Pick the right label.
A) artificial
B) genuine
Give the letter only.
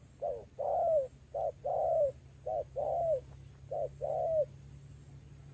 B